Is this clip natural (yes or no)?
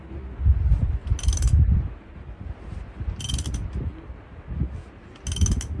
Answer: yes